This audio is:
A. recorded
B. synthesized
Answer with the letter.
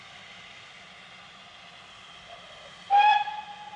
A